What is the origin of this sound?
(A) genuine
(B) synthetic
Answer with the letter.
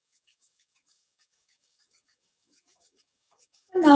B